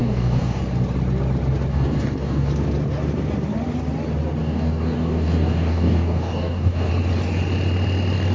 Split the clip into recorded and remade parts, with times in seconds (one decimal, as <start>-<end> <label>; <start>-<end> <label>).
0.0-0.6 remade; 0.6-1.7 recorded; 1.7-2.5 remade; 2.5-4.4 recorded; 4.4-6.9 remade; 6.9-8.3 recorded